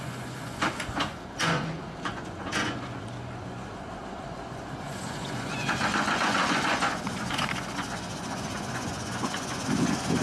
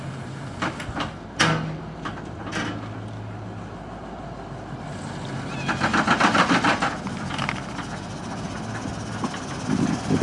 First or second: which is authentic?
second